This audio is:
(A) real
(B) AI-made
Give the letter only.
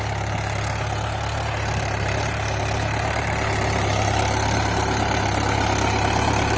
A